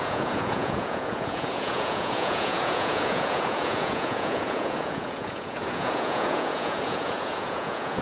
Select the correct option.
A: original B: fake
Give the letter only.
B